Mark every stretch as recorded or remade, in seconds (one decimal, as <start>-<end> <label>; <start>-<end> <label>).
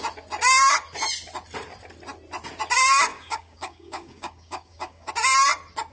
0.0-3.1 recorded; 3.1-5.1 remade; 5.1-5.9 recorded